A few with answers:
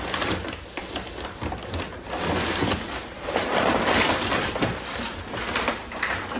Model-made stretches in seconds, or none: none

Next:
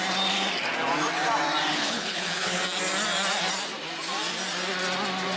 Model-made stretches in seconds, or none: 1.7-2.6 (codec, HILCodec)

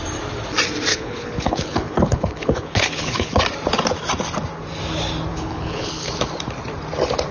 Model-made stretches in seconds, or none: 0.9-3.4 (codec, HILCodec); 5.3-6.1

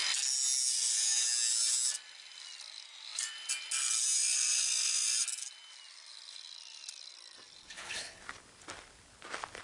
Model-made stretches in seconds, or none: 7.6-8.2 (codec, HILCodec)

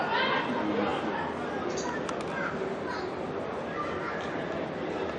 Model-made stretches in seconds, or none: none

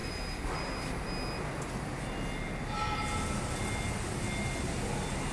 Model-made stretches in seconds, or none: none